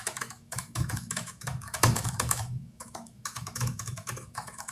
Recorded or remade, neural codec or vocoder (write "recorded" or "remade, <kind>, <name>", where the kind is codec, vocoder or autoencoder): remade, autoencoder, DAC-VAE